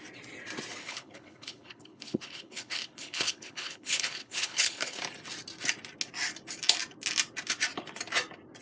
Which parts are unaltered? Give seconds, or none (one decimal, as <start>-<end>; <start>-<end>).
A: 0.0-0.8; 5.0-8.6